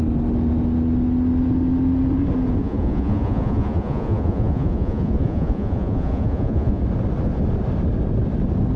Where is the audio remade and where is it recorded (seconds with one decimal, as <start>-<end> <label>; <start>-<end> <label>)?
0.0-2.6 recorded; 2.6-6.8 remade; 6.8-8.8 recorded